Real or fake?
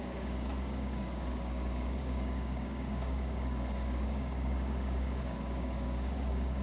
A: fake